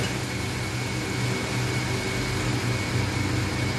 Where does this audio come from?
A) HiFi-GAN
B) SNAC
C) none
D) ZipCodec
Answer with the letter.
C